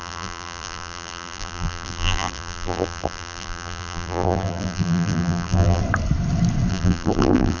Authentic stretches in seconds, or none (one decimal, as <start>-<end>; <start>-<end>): 5.8-6.7